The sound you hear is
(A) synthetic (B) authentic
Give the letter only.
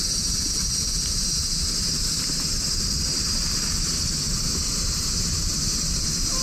B